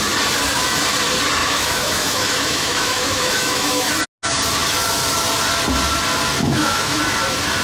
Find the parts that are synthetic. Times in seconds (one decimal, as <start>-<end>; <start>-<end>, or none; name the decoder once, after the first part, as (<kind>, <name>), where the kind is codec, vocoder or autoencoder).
1.4-3.9 (autoencoder, DAC-VAE); 6.4-7.0